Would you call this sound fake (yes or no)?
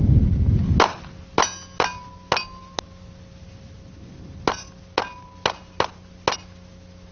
no